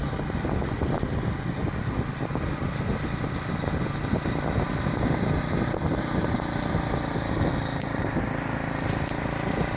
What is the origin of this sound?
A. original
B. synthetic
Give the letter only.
A